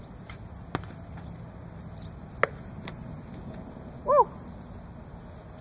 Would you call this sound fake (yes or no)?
no